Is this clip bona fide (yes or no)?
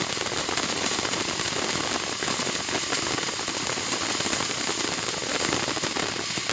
yes